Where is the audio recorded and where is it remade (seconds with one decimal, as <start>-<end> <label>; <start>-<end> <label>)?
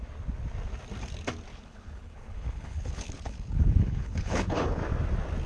0.0-1.5 recorded; 1.5-4.8 remade; 4.8-5.5 recorded